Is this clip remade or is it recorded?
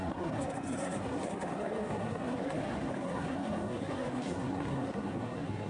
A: remade